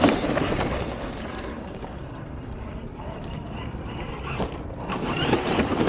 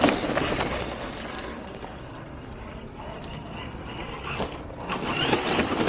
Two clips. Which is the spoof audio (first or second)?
first